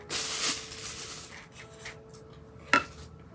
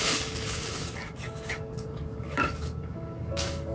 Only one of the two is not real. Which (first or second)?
second